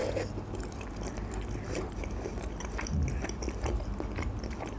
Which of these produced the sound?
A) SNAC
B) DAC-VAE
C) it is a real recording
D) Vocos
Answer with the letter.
C